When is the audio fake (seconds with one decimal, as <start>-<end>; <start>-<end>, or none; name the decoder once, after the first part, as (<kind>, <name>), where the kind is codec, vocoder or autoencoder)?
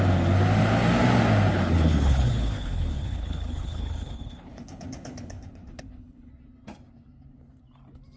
1.5-6.3 (codec, HILCodec)